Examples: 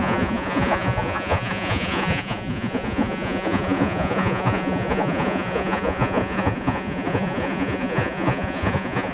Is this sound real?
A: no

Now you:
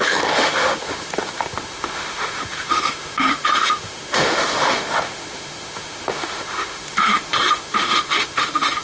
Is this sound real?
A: no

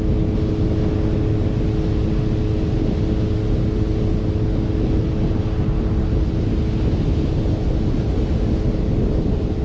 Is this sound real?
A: yes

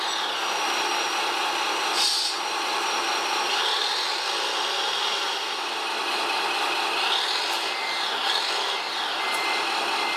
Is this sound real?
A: yes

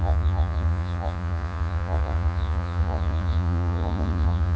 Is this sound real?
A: no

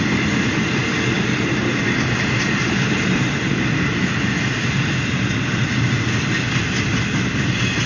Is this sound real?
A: yes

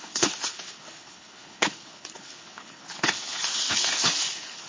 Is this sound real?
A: no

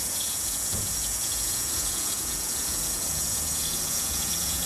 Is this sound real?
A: no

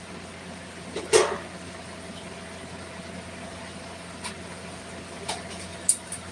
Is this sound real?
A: yes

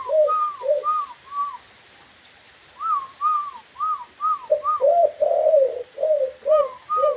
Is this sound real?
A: yes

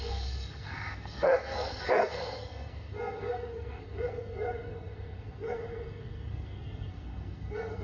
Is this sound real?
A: no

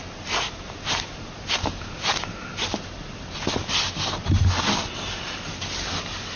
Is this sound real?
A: yes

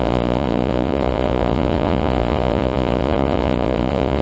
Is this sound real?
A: no